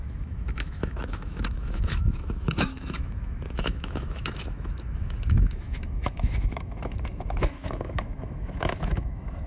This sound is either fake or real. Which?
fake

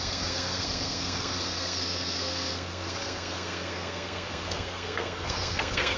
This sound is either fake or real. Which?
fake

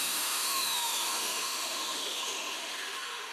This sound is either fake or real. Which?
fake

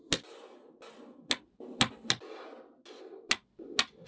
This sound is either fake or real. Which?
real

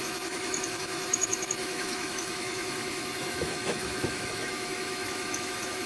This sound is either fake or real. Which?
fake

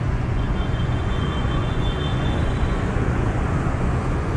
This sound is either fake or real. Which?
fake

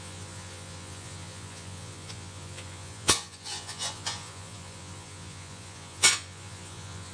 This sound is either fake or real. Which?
fake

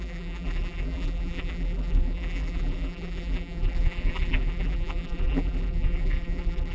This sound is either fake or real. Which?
fake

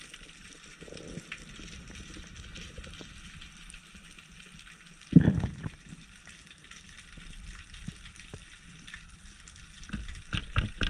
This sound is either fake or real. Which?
real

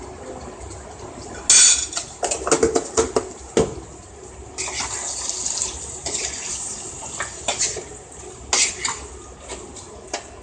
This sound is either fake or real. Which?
real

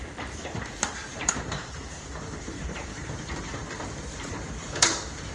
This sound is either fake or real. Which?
fake